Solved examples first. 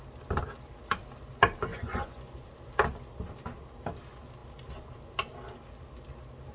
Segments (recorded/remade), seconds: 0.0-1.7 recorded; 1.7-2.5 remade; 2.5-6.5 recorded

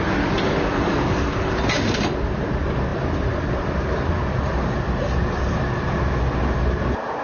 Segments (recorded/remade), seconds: 0.0-2.9 recorded; 2.9-4.6 remade; 4.6-7.2 recorded